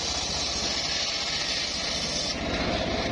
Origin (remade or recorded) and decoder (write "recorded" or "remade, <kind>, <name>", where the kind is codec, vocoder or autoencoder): recorded